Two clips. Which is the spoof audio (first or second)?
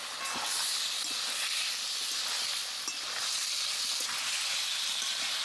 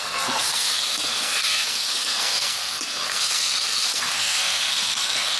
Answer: second